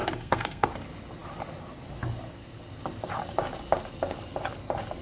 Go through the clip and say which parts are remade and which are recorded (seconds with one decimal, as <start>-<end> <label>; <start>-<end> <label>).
0.0-0.7 remade; 0.7-5.0 recorded